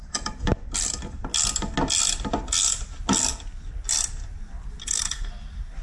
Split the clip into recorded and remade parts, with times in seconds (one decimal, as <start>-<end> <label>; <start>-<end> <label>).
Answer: 0.0-4.8 recorded; 4.8-5.3 remade; 5.3-5.8 recorded